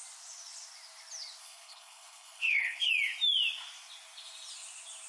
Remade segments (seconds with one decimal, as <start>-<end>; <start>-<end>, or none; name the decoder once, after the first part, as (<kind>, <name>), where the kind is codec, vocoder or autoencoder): 1.4-2.9 (codec, HILCodec)